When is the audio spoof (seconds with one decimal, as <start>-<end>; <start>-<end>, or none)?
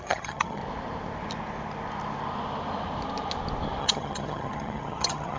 0.0-0.6; 3.8-5.4